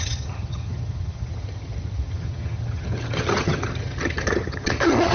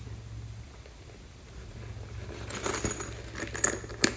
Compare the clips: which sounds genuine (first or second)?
second